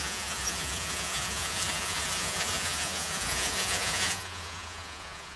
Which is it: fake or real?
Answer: fake